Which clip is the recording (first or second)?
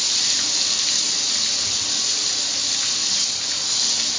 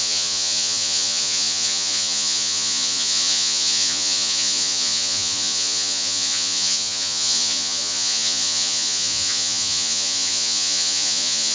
first